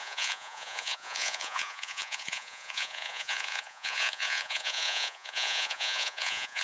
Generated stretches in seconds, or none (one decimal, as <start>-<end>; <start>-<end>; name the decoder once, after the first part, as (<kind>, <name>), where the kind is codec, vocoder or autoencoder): 0.0-6.6 (vocoder, Vocos)